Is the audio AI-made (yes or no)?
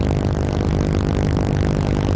no